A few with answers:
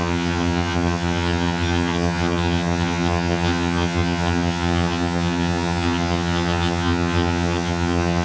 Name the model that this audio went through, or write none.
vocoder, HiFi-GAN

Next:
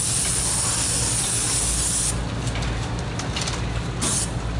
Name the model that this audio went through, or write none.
none